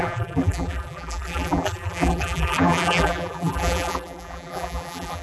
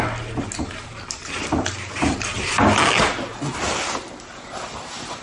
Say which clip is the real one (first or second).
second